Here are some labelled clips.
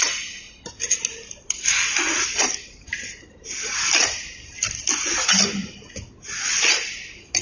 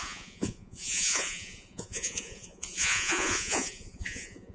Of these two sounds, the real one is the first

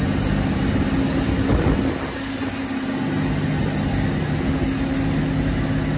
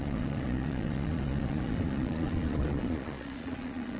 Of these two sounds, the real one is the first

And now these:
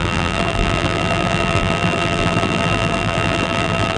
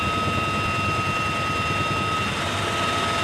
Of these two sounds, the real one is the second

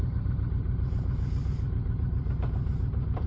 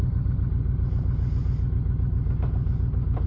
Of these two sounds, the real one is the second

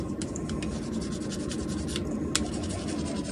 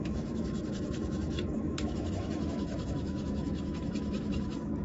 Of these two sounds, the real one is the first